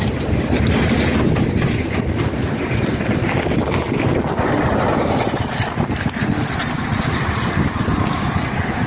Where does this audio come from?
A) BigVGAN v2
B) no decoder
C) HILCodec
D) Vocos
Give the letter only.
B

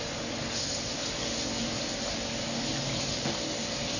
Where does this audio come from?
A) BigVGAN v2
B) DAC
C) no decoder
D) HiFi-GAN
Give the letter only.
C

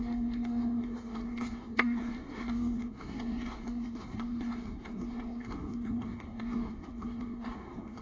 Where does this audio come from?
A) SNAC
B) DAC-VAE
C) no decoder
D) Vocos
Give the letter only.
A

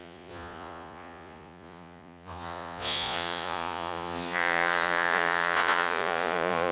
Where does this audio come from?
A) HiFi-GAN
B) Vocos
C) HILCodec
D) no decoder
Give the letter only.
B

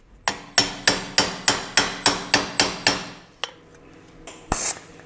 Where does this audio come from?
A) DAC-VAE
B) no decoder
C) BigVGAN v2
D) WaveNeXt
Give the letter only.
B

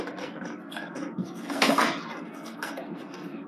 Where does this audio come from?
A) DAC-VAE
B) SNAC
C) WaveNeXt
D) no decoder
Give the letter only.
B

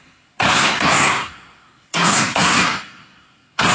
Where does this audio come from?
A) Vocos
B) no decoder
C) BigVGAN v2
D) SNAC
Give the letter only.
D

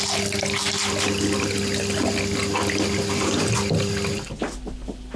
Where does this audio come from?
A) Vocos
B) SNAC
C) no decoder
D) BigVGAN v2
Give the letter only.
C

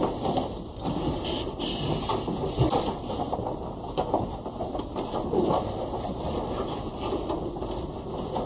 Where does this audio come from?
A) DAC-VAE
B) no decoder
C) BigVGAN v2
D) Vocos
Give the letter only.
B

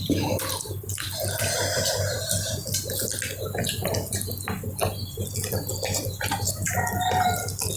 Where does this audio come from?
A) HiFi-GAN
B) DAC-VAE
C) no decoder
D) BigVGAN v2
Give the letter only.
C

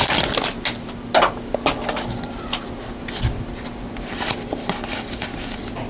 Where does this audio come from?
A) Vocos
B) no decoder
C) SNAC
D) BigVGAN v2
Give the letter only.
B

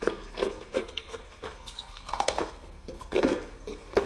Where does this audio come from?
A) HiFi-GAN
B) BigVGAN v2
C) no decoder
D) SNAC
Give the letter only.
D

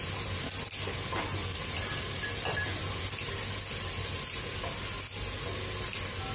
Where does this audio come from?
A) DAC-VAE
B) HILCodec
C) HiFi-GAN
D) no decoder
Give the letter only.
D